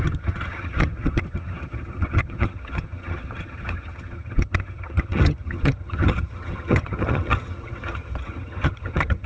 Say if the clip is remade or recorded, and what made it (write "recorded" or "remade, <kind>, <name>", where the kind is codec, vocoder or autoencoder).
remade, vocoder, HiFi-GAN